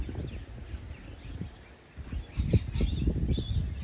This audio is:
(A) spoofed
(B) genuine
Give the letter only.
B